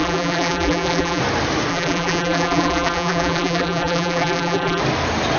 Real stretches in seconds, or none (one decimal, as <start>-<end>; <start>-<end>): 1.2-1.7; 4.8-5.4